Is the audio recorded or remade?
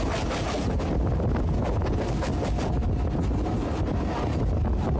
recorded